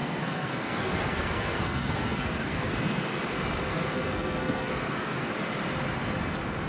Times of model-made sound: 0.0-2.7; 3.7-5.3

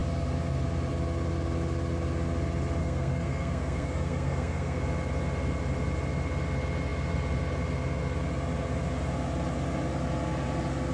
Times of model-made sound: 2.8-4.8

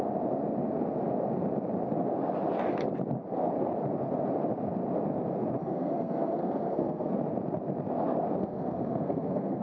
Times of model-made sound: 5.6-7.1; 8.4-9.6

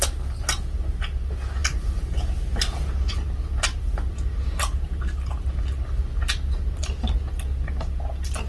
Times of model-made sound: none